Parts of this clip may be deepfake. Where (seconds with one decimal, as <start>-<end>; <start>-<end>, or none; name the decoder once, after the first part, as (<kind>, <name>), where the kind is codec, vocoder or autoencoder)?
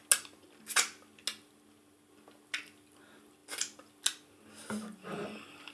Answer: none